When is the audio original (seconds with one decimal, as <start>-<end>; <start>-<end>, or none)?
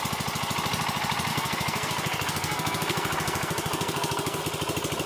0.0-1.3; 4.4-5.1